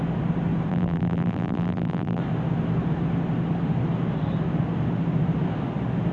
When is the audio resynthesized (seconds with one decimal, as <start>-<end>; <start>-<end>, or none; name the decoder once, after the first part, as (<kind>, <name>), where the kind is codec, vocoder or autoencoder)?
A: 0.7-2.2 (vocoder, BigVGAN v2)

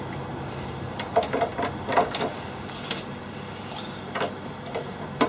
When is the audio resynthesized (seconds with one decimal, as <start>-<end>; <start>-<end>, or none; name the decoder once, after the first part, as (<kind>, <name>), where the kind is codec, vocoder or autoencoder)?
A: 0.0-1.5 (vocoder, BigVGAN v2); 4.7-5.3

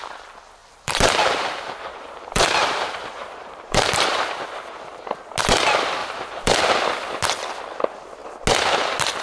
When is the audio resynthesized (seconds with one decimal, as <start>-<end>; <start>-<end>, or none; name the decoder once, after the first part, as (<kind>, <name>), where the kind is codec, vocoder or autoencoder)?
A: 0.6-4.3 (vocoder, BigVGAN v2); 6.0-6.6